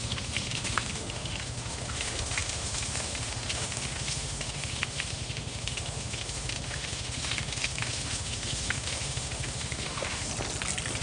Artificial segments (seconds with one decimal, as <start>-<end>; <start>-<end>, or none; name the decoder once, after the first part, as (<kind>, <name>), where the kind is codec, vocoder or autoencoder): 0.0-10.3 (autoencoder, DAC-VAE)